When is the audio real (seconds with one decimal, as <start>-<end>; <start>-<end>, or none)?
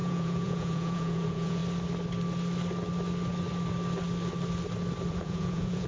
1.6-5.1